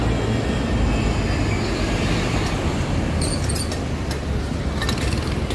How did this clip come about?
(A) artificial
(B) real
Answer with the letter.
B